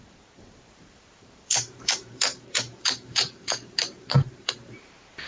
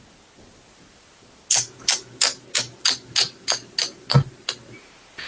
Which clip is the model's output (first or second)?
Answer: first